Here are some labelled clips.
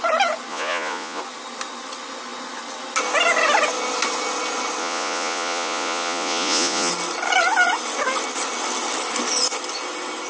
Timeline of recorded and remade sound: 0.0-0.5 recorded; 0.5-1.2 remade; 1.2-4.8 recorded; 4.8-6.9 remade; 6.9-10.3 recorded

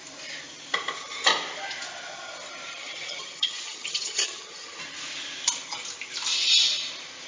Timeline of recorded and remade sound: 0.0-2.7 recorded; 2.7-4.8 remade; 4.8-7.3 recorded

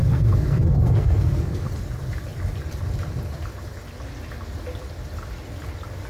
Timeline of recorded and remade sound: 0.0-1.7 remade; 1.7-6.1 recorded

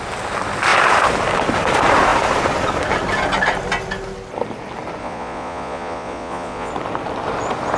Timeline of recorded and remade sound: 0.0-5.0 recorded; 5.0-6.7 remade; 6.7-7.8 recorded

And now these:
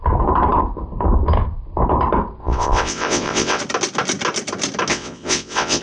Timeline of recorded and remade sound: 0.0-2.4 recorded; 2.4-3.6 remade; 3.6-4.9 recorded; 4.9-5.8 remade